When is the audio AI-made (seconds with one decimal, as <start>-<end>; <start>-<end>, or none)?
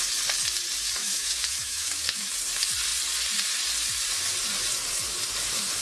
1.0-2.3